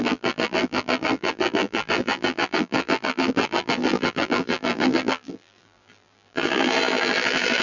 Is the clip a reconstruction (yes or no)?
yes